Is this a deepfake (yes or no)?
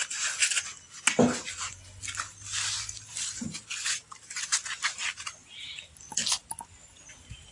no